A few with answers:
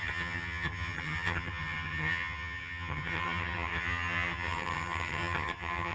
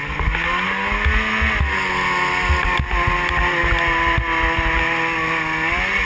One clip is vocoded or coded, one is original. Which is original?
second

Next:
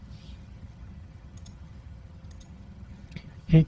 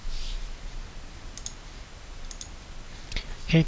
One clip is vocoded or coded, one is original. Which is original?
second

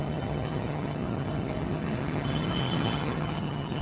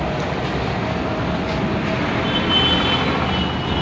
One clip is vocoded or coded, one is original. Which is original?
second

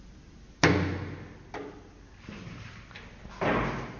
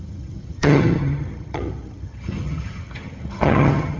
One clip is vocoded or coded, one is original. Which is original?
first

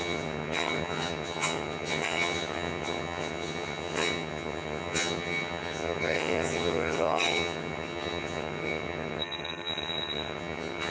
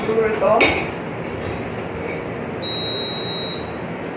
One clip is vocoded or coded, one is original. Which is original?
second